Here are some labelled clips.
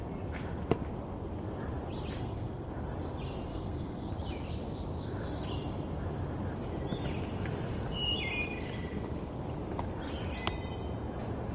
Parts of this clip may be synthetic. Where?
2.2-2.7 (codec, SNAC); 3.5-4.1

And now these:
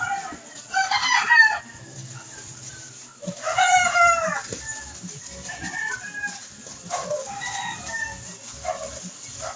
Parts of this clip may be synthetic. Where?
none

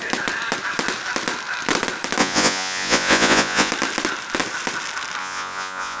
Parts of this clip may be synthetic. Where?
2.2-3.7 (vocoder, Vocos); 5.2-6.0

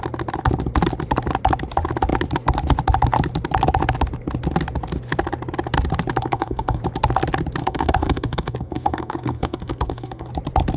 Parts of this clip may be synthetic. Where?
6.3-6.8 (codec, SNAC); 7.6-10.3

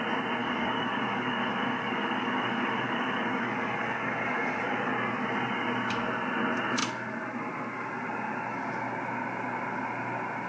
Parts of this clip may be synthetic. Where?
0.4-4.9 (codec, DAC)

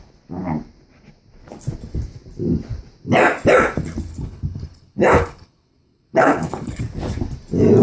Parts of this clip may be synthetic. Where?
4.1-6.8 (codec, HILCodec)

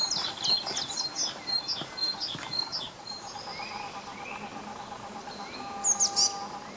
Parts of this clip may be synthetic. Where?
none

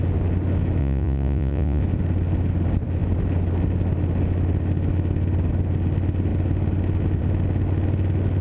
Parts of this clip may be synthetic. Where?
0.8-1.8 (vocoder, Vocos)